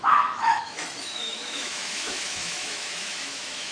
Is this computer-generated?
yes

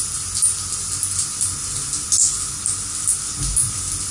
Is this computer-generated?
no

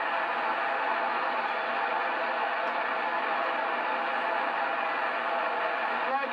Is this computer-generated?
no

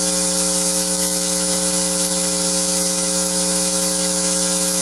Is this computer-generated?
yes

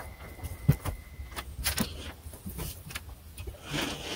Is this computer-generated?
no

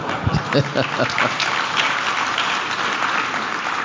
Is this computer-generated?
no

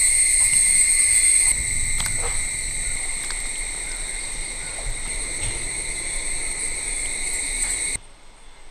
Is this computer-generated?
no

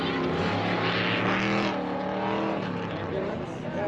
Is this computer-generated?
no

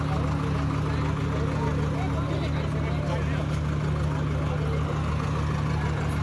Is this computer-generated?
no